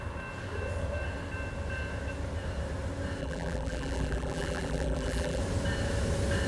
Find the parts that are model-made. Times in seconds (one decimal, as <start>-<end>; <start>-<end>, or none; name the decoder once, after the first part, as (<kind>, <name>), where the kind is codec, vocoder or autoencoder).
3.2-5.4 (vocoder, BigVGAN v2)